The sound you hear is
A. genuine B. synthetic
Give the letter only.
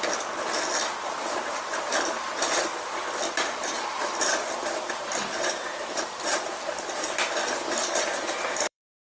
B